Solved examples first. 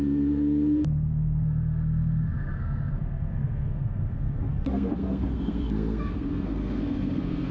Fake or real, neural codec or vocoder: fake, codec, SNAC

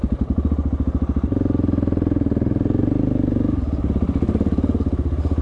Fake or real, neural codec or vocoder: real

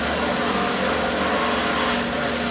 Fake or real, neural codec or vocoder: real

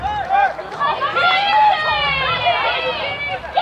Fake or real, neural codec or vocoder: real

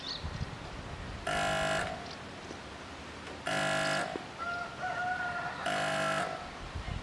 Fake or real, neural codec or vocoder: real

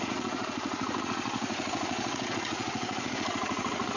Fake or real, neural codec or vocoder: fake, vocoder, Vocos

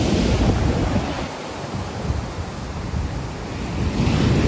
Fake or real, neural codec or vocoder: real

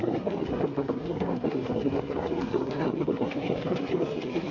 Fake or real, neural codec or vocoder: fake, codec, SNAC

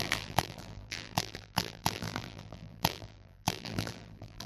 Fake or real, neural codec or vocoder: fake, vocoder, BigVGAN v2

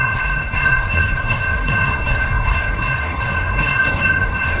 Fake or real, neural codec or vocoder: fake, codec, SNAC